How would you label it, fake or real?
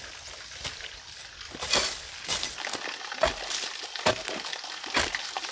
real